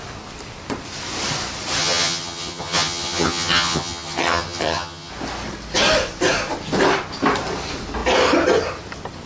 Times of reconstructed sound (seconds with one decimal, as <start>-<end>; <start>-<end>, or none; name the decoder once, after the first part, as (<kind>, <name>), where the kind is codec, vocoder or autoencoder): 1.8-5.1 (vocoder, HiFi-GAN)